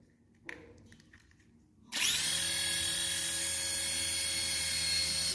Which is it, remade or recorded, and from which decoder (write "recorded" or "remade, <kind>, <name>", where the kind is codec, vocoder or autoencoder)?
recorded